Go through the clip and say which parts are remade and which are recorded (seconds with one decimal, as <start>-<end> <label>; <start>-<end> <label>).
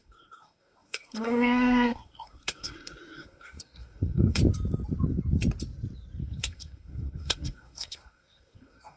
0.0-4.4 remade; 4.4-6.2 recorded; 6.2-9.0 remade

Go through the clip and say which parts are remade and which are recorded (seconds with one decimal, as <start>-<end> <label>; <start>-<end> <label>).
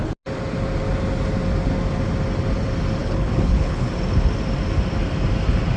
0.0-3.0 recorded; 3.0-3.9 remade; 3.9-5.8 recorded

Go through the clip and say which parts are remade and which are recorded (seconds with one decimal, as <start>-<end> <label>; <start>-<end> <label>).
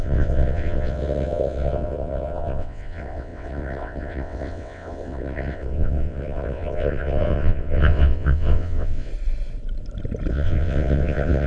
0.0-9.1 remade; 9.1-10.3 recorded; 10.3-11.5 remade